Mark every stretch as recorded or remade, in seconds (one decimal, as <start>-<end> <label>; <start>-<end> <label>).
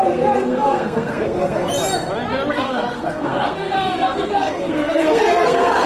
0.0-1.7 remade; 1.7-2.5 recorded; 2.5-5.9 remade